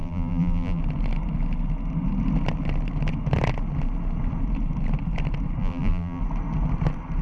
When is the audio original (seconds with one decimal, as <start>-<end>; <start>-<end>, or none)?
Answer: 0.8-5.6; 6.2-7.2